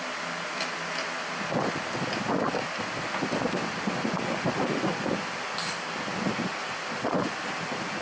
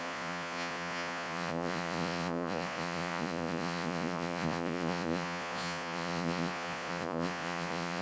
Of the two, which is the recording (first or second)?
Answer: first